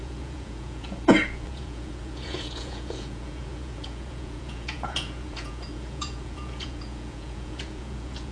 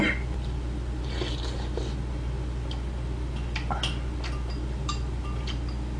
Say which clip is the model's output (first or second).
first